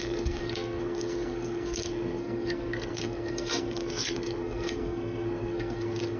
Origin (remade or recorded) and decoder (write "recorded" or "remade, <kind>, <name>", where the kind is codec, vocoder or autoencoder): remade, codec, SNAC